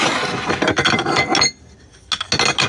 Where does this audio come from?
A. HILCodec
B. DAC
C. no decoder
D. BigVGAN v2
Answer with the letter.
C